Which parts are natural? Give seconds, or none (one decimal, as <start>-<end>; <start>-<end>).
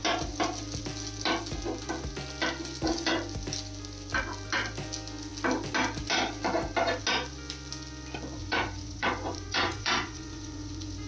0.0-8.4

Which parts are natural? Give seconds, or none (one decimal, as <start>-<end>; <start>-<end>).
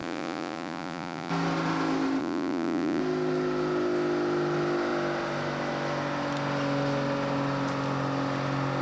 1.3-2.2; 3.0-8.8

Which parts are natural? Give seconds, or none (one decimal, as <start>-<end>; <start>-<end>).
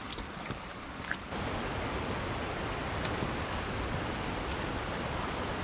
0.0-5.6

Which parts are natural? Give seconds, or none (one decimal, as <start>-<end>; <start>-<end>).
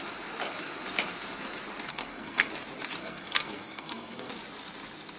0.0-1.9; 2.5-3.0; 4.3-5.2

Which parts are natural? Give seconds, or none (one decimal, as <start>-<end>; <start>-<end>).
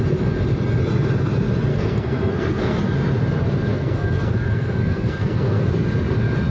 0.0-1.7; 2.8-3.7; 5.7-6.5